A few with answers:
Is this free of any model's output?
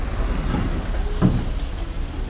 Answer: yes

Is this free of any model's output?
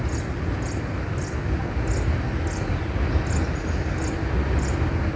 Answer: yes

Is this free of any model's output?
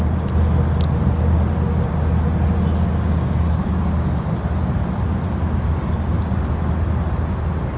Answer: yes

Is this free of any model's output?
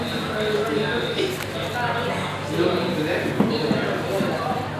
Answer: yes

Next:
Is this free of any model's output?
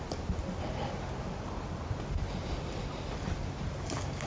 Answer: yes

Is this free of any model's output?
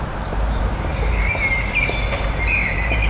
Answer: no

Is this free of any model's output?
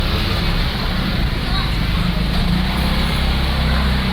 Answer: yes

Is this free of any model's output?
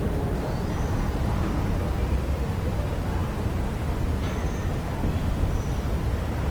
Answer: yes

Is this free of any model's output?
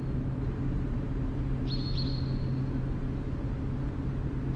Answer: yes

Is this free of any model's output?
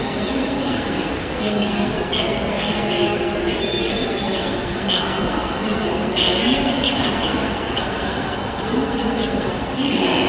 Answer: no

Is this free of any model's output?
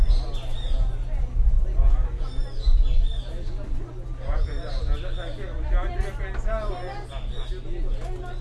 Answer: yes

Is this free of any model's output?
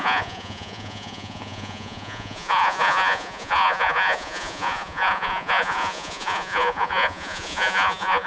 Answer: no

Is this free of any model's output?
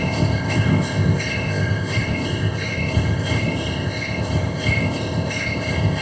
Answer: no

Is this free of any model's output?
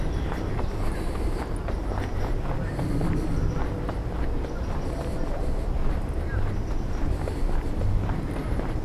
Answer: yes